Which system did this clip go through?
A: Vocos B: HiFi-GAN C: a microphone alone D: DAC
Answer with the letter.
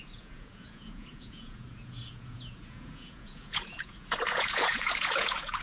A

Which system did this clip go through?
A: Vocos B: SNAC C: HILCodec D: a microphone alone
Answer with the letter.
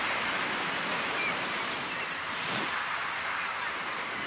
D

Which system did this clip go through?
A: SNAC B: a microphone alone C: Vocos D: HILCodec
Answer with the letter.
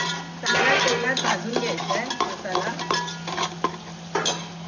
B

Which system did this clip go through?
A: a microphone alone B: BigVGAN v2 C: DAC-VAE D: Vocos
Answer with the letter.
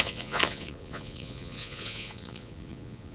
D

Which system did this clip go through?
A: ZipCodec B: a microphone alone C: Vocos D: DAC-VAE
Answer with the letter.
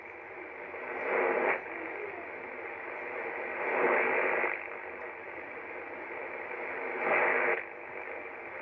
B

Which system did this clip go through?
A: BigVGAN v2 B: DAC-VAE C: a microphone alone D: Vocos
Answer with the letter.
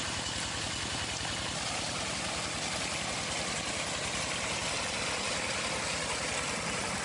C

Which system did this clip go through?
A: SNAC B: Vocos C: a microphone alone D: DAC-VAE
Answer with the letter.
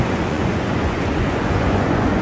B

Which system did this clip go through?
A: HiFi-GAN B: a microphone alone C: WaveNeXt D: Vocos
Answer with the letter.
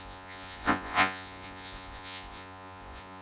D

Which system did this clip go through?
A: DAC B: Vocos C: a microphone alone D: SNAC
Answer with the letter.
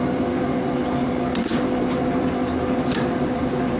C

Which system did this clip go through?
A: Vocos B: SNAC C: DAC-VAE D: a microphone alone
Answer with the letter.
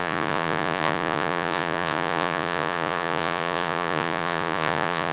A